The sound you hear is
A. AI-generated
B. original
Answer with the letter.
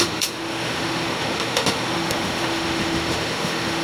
A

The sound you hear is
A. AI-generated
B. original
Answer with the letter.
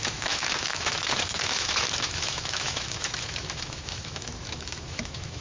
A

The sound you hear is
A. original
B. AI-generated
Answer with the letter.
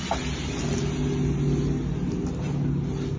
A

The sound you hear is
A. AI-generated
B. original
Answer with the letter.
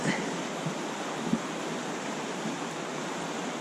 B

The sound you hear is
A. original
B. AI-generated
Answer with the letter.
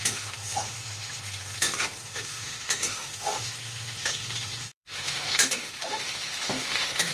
B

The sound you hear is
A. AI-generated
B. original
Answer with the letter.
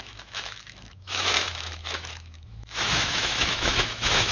A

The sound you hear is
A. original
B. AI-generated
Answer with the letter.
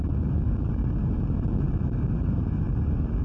B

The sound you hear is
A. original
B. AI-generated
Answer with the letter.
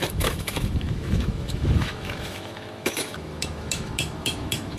B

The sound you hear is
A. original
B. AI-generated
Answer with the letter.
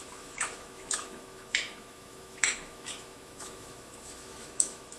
B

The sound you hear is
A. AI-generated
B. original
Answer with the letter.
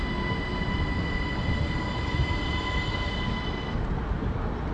B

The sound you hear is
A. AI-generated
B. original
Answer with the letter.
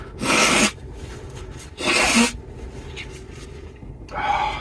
B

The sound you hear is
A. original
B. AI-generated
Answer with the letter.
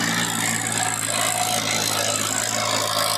A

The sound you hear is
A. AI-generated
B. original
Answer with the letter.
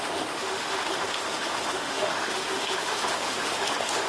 A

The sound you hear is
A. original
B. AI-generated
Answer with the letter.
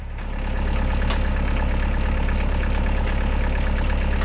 A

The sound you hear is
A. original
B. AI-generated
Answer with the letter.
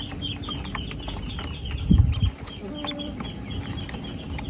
A